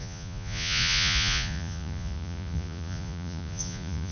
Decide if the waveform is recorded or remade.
remade